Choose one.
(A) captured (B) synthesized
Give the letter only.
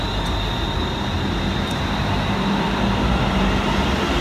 A